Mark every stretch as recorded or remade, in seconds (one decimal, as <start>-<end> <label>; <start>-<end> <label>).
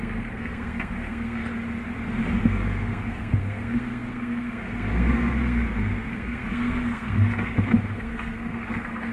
0.0-1.4 remade; 1.4-2.4 recorded; 2.4-9.1 remade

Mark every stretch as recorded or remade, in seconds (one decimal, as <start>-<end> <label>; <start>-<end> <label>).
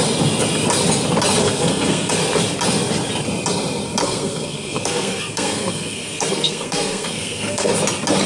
0.0-1.4 recorded; 1.4-2.1 remade; 2.1-4.0 recorded; 4.0-7.7 remade; 7.7-8.3 recorded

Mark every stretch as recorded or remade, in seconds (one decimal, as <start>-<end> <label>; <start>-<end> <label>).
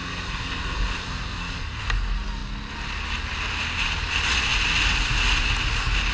0.0-1.8 remade; 1.8-6.1 recorded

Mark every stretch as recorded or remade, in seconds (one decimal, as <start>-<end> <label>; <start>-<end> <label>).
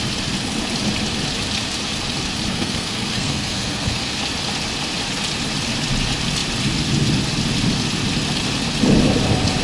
0.0-2.5 recorded; 2.5-4.2 remade; 4.2-9.6 recorded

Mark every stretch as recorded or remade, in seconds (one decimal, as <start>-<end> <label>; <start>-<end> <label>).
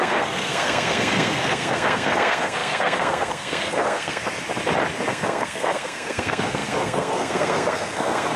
0.0-4.2 remade; 4.2-5.1 recorded; 5.1-8.4 remade